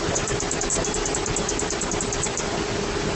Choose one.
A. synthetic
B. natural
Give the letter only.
B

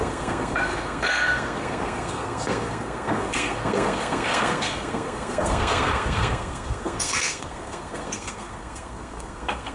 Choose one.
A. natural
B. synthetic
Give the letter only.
B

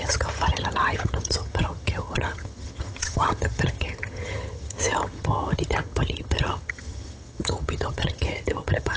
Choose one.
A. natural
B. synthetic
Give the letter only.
B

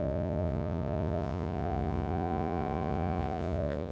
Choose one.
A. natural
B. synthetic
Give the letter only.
B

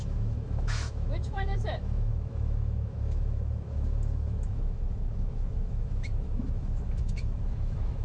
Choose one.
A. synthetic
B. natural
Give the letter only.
A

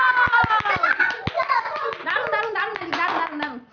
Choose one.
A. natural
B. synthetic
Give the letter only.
A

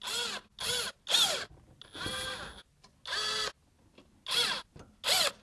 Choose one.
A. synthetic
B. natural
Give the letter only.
B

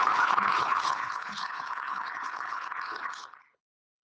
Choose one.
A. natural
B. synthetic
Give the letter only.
B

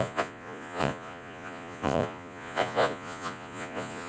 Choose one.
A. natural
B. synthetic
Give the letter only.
B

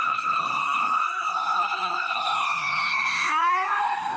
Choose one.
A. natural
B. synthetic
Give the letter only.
B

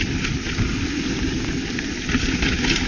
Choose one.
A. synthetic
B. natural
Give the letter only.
B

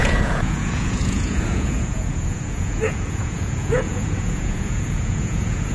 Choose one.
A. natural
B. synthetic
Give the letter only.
B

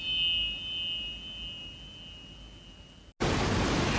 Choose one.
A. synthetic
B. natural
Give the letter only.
B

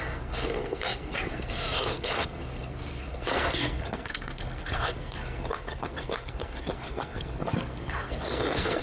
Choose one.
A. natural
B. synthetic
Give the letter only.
B